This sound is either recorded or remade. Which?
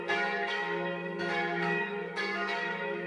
remade